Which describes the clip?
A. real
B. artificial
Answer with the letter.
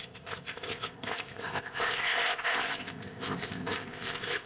B